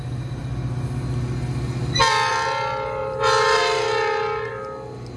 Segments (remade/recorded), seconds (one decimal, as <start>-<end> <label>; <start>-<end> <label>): 0.0-3.0 recorded; 3.0-4.5 remade; 4.5-5.2 recorded